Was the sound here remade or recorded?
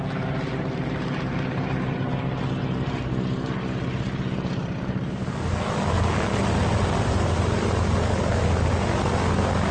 recorded